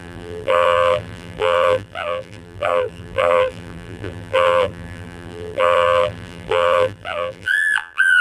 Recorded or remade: remade